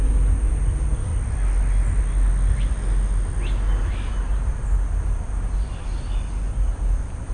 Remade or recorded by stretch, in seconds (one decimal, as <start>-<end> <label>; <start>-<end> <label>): 0.0-1.1 remade; 1.1-4.9 recorded; 4.9-5.9 remade; 5.9-6.5 recorded; 6.5-7.3 remade